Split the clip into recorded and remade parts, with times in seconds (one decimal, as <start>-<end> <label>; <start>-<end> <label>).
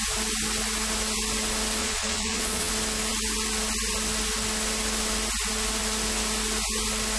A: 0.0-1.8 recorded; 1.8-2.7 remade; 2.7-7.2 recorded